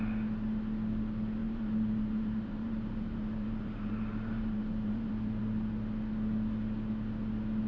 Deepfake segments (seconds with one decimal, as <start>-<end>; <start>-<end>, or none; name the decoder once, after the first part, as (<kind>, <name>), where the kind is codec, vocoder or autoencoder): 1.4-5.4 (vocoder, BigVGAN v2)